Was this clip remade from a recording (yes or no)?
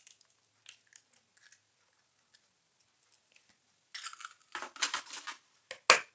no